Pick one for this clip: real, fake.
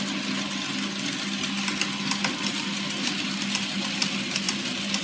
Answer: real